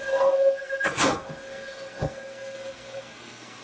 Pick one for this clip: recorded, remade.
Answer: remade